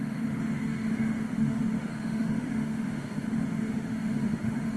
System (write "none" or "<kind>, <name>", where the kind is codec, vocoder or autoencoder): autoencoder, DAC-VAE